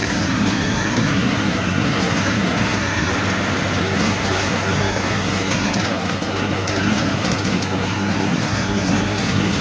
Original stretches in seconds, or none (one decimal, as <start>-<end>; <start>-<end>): 3.1-3.8

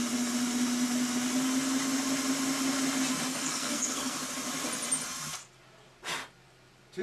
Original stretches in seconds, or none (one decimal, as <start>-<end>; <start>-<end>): 0.0-3.3; 4.2-7.0

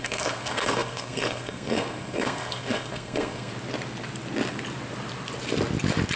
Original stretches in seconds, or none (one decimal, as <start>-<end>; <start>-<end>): 3.5-6.2